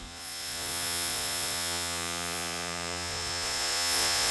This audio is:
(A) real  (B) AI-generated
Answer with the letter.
B